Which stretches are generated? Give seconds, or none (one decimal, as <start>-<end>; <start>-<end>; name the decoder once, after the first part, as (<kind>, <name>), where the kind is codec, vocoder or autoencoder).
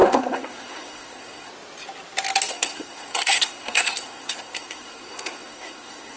0.0-1.5 (codec, SNAC); 2.5-6.2